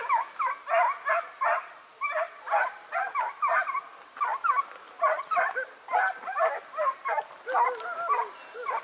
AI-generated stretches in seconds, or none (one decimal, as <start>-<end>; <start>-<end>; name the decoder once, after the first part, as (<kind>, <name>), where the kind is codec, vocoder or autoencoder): none